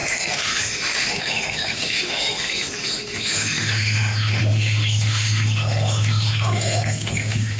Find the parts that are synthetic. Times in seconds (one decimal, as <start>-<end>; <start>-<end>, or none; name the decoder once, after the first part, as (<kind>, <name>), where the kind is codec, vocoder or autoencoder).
0.0-7.6 (autoencoder, DAC-VAE)